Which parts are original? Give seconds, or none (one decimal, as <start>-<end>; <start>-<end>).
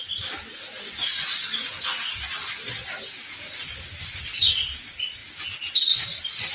0.0-6.5